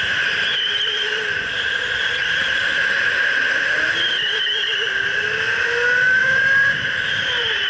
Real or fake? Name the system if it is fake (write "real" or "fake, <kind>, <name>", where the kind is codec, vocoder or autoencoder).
real